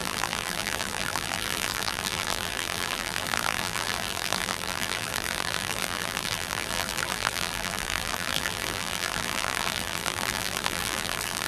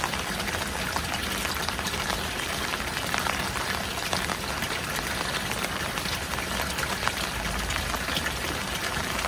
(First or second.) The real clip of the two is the second